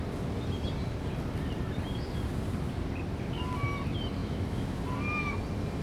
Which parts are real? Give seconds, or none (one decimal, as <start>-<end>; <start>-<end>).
0.0-4.2; 4.8-5.8